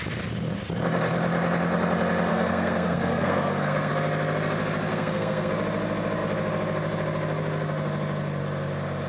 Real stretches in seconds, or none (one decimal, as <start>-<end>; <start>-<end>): 0.0-2.3; 3.9-4.9; 5.5-9.1